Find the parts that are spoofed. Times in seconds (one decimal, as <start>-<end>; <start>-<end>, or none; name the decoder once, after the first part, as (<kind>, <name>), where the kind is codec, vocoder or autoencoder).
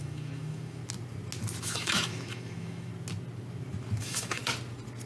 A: 0.0-0.8 (autoencoder, DAC-VAE); 1.6-2.9; 4.0-4.4